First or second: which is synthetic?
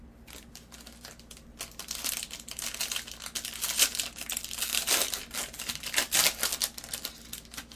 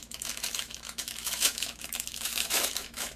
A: second